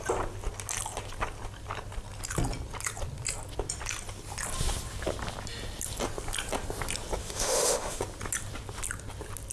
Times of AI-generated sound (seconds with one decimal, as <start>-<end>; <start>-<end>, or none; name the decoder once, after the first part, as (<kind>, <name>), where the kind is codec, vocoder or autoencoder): 7.2-8.0 (autoencoder, DAC-VAE)

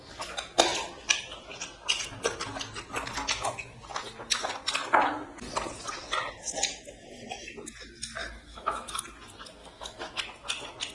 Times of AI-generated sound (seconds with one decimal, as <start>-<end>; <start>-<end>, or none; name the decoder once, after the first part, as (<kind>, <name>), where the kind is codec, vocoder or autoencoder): 8.2-9.0 (autoencoder, DAC-VAE); 9.6-10.2

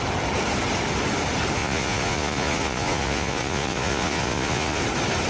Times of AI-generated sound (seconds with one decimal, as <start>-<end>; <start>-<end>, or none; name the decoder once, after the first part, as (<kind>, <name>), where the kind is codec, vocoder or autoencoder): 1.6-4.8 (vocoder, Vocos)

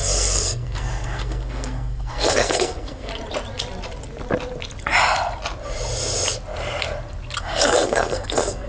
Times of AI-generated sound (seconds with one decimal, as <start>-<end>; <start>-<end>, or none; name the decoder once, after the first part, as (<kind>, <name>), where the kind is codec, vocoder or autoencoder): 0.0-3.1 (codec, SNAC); 7.4-8.7

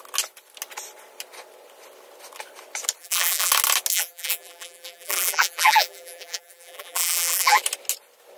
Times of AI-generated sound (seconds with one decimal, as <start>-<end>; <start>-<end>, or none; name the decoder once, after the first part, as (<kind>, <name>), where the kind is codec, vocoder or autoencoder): 3.0-3.5 (vocoder, BigVGAN v2); 3.9-7.6

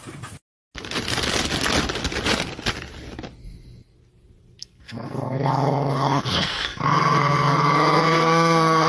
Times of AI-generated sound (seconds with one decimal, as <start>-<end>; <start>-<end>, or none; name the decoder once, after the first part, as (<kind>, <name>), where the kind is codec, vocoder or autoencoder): 4.6-8.9 (codec, SNAC)

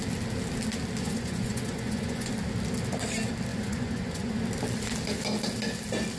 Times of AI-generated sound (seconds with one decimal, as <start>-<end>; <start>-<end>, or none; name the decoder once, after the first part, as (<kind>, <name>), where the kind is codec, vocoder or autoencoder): 1.0-2.3 (vocoder, Vocos); 3.5-4.4

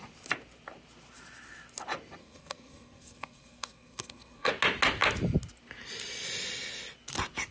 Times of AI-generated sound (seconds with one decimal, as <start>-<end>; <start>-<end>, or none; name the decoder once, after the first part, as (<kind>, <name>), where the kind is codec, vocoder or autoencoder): 2.2-4.5 (codec, SNAC)